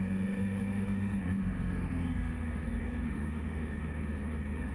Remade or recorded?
remade